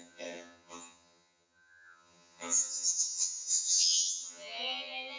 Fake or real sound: fake